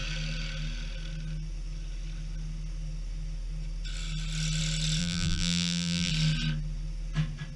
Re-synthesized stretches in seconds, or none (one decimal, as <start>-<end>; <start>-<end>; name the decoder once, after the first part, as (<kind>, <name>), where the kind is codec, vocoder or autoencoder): 5.0-6.1 (vocoder, BigVGAN v2)

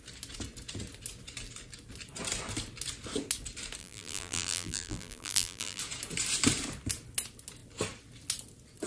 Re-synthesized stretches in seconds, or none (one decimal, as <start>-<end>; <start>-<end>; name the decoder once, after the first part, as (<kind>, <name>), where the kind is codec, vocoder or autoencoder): 3.8-5.8 (vocoder, BigVGAN v2)

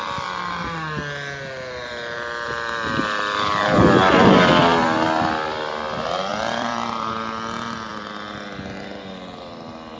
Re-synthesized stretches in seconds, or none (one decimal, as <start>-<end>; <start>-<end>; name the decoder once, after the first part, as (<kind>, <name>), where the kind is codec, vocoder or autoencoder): 3.6-4.5 (vocoder, BigVGAN v2); 6.3-7.1

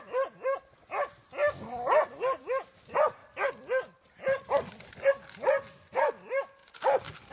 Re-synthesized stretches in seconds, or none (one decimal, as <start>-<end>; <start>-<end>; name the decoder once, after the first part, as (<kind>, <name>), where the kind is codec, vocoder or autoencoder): 3.2-5.1 (vocoder, BigVGAN v2); 6.6-7.3

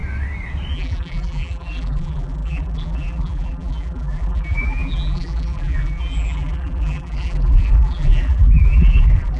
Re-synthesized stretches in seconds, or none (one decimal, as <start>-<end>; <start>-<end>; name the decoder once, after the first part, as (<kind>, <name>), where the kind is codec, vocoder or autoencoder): 0.7-9.4 (vocoder, BigVGAN v2)

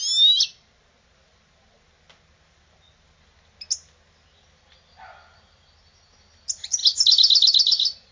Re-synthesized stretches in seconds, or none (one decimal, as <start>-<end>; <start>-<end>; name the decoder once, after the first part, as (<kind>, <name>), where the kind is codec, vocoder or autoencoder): none

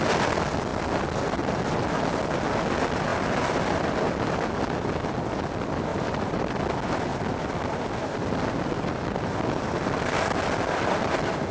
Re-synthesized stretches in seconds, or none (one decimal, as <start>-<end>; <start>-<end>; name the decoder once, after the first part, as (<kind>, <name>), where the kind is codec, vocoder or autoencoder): 3.1-4.0 (vocoder, BigVGAN v2); 5.9-6.5